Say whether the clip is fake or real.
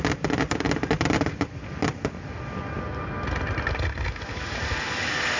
real